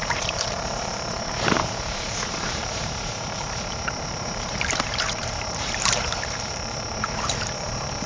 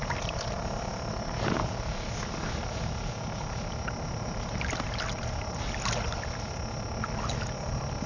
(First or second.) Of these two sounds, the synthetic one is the first